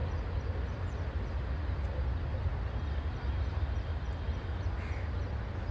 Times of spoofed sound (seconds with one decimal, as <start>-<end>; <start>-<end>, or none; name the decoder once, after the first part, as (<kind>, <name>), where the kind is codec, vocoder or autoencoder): none